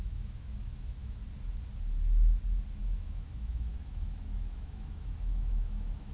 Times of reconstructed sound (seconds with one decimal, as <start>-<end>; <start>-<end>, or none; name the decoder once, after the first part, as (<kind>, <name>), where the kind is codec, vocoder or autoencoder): 0.0-1.2 (autoencoder, DAC-VAE); 2.8-6.1

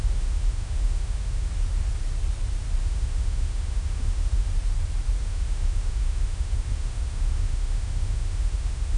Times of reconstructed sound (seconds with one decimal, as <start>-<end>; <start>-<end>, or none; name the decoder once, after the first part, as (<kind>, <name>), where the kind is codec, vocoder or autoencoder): 0.0-1.5 (autoencoder, DAC-VAE); 2.8-4.5; 5.2-9.0

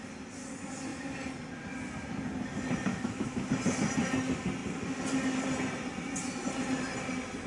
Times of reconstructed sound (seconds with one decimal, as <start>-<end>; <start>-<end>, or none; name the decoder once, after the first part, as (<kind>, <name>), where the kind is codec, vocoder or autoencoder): 2.9-3.5 (autoencoder, DAC-VAE)

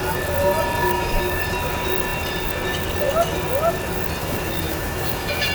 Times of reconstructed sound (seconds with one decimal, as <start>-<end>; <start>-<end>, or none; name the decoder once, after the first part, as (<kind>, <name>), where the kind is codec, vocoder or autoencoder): 0.8-1.4 (autoencoder, DAC-VAE); 4.2-5.5

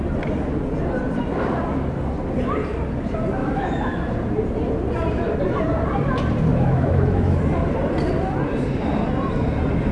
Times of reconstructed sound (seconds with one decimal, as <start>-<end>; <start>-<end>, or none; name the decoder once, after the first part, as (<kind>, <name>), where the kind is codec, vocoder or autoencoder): 3.4-4.0 (autoencoder, DAC-VAE); 6.5-7.4

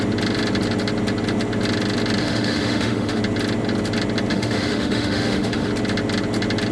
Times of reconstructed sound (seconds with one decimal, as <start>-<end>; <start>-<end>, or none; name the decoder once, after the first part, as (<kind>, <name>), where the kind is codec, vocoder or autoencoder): 2.2-3.2 (autoencoder, DAC-VAE); 4.3-5.7

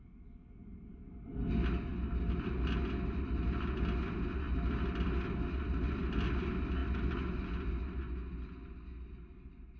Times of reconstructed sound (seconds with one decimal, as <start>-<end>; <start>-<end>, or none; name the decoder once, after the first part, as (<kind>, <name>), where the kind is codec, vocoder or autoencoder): none